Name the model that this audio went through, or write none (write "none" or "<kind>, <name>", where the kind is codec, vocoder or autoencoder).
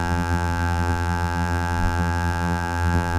vocoder, BigVGAN v2